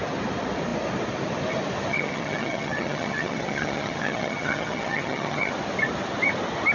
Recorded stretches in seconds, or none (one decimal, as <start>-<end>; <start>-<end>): 0.0-1.9; 5.5-6.7